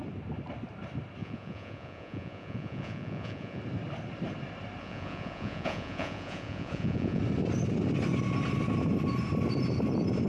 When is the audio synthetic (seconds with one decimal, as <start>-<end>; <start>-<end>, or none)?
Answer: 1.2-3.6; 4.8-7.2